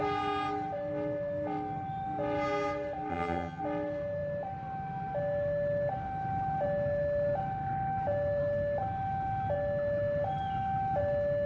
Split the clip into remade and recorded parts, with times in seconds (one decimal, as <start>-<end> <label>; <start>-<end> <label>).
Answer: 0.0-3.1 recorded; 3.1-3.6 remade; 3.6-11.5 recorded